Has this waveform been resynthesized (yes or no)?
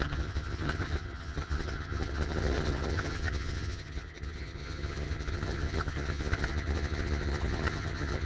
yes